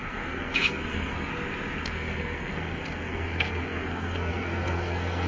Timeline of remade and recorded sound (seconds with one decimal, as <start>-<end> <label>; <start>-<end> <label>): 0.0-1.3 remade; 1.3-1.8 recorded; 1.8-5.3 remade